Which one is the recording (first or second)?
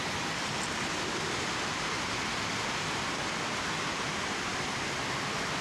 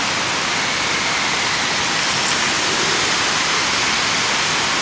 second